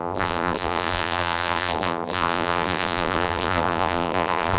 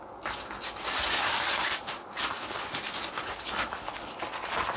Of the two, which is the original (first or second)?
second